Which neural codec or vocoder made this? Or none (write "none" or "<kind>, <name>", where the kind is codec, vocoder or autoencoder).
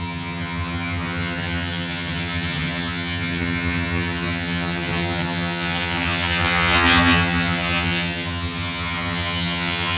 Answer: vocoder, HiFi-GAN